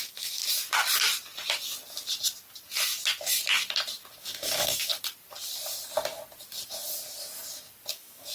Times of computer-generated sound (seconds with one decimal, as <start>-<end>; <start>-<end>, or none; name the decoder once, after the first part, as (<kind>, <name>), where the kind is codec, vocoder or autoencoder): 0.0-0.4 (autoencoder, DAC-VAE); 4.2-4.9; 7.9-8.3